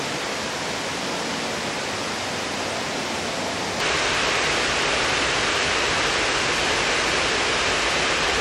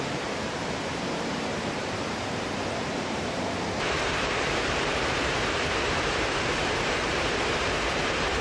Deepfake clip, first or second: second